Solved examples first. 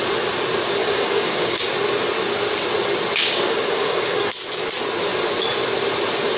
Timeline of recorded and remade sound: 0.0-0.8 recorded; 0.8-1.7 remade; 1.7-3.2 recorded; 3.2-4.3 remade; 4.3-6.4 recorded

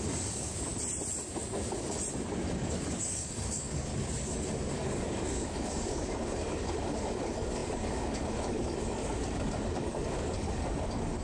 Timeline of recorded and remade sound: 0.0-0.7 remade; 0.7-2.5 recorded; 2.5-3.9 remade; 3.9-4.7 recorded; 4.7-11.2 remade

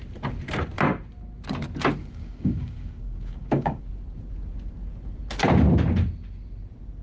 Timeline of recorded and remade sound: 0.0-2.0 recorded; 2.0-3.8 remade; 3.8-7.0 recorded